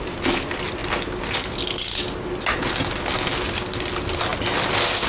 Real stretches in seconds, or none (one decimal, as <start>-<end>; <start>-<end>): 0.0-5.1

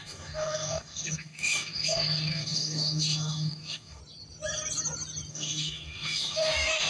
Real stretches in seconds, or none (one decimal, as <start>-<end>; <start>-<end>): 4.0-5.3

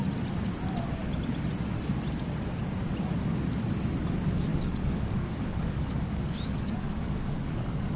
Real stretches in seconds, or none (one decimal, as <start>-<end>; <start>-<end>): 0.0-4.5

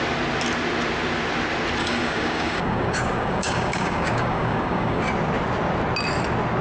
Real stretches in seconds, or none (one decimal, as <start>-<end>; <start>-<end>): 0.0-1.8; 5.0-6.6

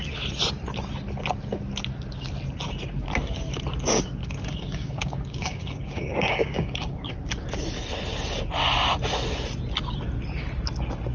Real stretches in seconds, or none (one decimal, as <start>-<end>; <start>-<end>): 0.0-4.2; 7.1-11.1

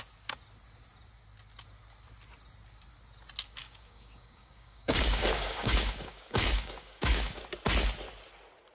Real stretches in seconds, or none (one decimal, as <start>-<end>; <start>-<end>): 0.0-3.6; 7.4-8.7

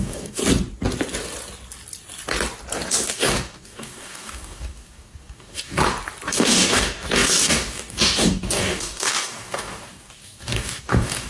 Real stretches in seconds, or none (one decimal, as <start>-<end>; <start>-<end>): 0.4-3.1; 5.8-6.3